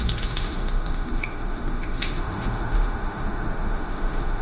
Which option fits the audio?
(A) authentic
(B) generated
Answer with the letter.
B